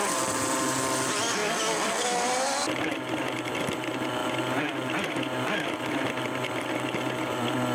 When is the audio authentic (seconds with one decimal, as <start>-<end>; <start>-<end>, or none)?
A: 0.0-7.7